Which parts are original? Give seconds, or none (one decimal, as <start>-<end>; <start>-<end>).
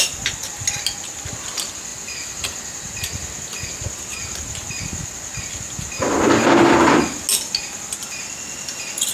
0.0-9.1